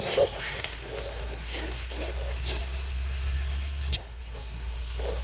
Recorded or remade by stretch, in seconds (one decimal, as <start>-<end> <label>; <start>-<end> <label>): 0.0-5.2 remade